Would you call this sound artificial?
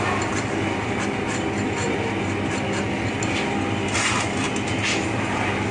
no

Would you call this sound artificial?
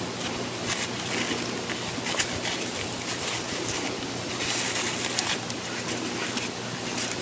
no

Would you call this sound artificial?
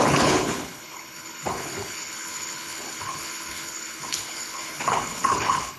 yes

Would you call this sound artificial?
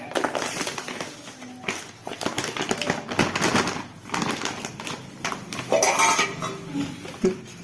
no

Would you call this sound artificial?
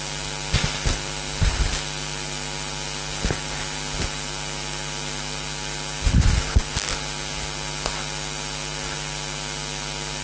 no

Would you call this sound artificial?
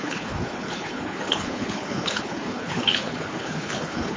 yes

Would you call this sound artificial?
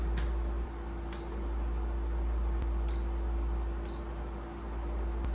no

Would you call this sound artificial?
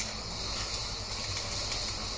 no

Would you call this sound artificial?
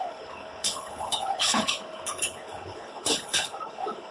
yes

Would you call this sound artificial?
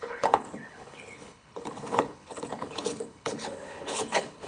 yes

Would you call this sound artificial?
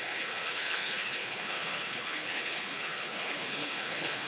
yes